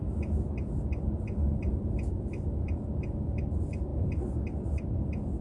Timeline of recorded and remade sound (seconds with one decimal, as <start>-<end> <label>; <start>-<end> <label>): 0.0-5.4 recorded